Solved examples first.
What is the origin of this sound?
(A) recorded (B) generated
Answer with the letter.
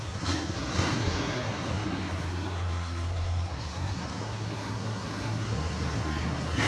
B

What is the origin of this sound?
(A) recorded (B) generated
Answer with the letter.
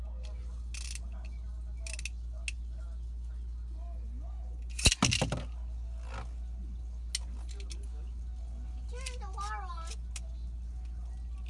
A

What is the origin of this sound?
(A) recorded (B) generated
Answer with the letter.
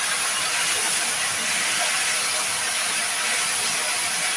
A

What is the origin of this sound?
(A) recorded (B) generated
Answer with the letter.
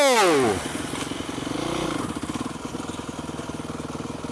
A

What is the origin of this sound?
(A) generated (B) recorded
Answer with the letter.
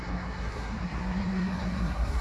A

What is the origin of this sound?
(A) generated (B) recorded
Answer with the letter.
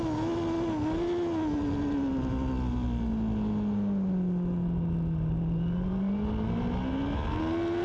B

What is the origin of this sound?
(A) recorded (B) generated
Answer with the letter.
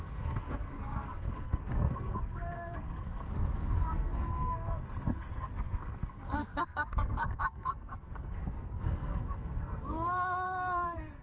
B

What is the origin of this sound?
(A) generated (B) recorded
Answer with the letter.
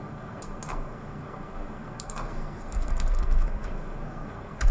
A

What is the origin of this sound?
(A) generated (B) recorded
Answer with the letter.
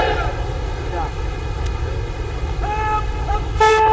B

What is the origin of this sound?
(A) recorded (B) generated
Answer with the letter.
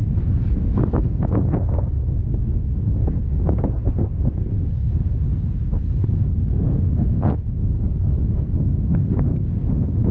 B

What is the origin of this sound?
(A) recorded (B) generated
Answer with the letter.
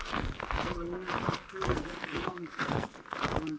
B